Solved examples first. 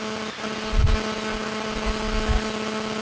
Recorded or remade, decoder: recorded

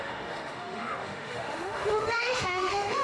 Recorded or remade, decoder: remade, autoencoder, DAC-VAE